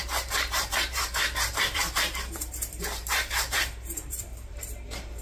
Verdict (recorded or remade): remade